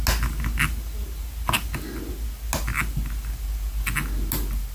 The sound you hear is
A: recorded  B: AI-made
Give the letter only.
A